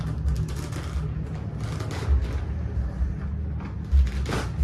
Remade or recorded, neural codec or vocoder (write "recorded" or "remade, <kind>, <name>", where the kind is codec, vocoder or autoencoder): recorded